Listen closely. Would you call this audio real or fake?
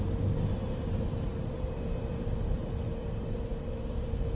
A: real